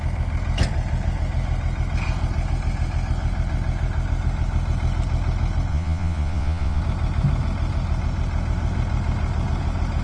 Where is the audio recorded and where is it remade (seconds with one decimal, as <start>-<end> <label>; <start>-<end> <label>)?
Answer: 0.0-5.7 recorded; 5.7-6.8 remade; 6.8-10.0 recorded